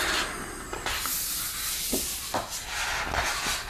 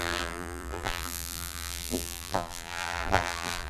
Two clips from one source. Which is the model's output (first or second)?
second